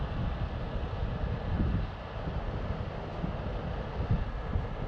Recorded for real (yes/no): yes